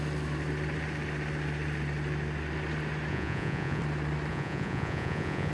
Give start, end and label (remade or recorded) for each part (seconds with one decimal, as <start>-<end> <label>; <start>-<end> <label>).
0.0-3.1 recorded; 3.1-3.8 remade; 3.8-4.3 recorded; 4.3-5.5 remade